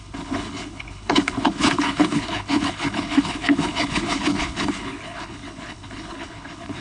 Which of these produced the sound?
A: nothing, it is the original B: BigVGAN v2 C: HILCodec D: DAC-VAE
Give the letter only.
C